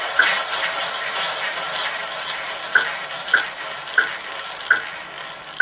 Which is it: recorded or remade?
recorded